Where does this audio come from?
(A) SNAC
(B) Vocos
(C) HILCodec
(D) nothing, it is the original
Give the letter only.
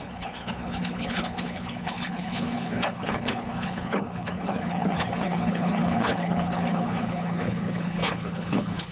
C